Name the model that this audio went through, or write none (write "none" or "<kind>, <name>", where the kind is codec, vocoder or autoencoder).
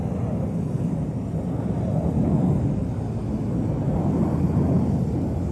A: none